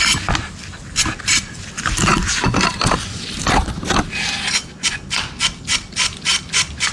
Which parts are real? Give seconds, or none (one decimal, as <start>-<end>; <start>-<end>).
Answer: 0.0-6.9